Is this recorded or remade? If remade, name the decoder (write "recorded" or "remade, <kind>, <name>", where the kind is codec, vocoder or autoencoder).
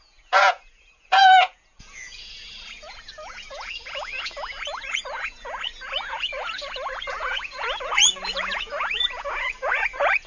remade, vocoder, Vocos